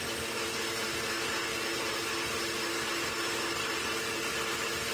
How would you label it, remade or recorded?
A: recorded